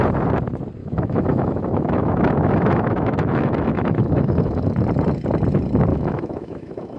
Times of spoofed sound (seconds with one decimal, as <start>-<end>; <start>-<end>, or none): 0.8-4.6; 5.9-7.0